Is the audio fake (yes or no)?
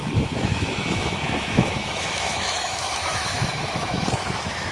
yes